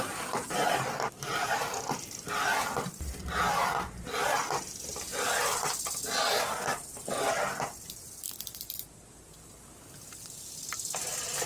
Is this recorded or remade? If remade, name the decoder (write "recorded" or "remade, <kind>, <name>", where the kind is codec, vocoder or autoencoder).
remade, vocoder, BigVGAN v2